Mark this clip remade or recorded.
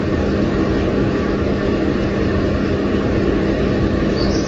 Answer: recorded